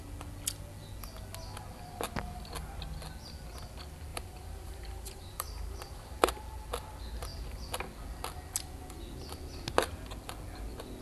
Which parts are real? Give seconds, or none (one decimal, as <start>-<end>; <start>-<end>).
0.0-4.1; 6.3-11.0